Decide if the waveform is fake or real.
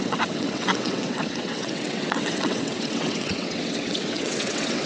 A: fake